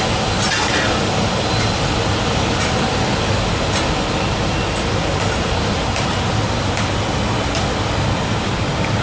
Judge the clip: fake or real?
real